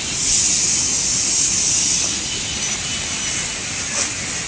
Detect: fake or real real